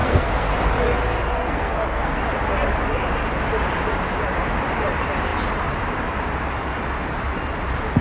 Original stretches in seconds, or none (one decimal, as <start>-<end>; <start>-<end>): 0.5-1.3; 2.2-8.0